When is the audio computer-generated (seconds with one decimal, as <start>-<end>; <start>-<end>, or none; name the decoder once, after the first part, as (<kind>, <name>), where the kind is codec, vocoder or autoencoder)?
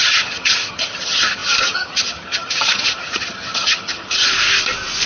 0.0-4.3 (vocoder, HiFi-GAN)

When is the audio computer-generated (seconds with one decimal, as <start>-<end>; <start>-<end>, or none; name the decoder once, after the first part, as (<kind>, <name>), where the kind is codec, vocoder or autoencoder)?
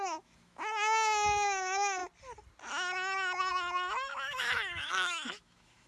0.0-2.0 (autoencoder, DAC-VAE); 3.5-5.9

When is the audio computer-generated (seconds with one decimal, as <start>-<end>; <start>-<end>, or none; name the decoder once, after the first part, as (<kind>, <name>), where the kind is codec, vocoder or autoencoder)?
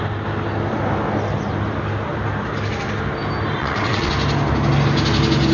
3.6-4.1 (vocoder, WaveNeXt)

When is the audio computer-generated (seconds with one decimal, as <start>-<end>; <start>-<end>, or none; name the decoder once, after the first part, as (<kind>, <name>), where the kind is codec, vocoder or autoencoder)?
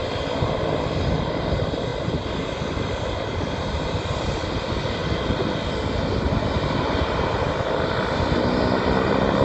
none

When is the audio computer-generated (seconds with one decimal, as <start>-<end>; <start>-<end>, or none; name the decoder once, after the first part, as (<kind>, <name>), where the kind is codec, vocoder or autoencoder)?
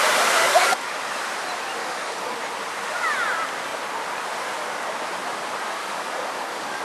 0.4-1.1 (codec, DAC); 1.8-2.4; 5.8-6.8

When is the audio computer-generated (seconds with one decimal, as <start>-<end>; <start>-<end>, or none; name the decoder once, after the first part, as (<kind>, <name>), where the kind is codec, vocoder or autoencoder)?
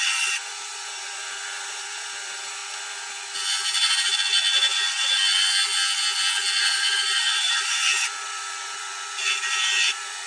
0.0-2.6 (vocoder, BigVGAN v2); 6.6-10.3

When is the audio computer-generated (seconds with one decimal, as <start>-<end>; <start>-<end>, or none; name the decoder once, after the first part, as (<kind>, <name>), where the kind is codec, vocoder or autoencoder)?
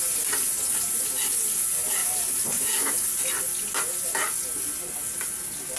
none